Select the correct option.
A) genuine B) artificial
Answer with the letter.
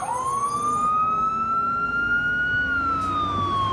A